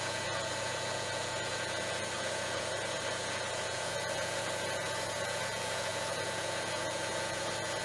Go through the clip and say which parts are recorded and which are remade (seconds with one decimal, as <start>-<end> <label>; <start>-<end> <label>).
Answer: 0.0-7.8 remade